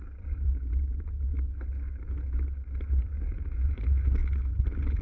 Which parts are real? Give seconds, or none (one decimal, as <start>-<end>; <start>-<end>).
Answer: 1.3-3.0; 4.2-5.0